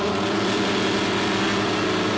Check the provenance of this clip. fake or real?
real